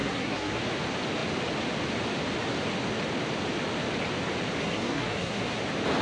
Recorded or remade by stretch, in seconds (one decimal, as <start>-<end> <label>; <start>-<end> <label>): 0.0-0.6 remade; 0.6-4.6 recorded; 4.6-5.6 remade; 5.6-6.0 recorded